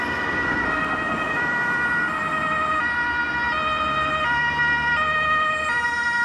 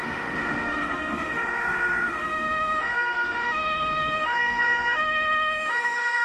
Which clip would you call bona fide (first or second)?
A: first